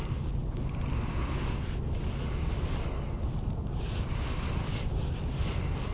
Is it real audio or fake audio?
real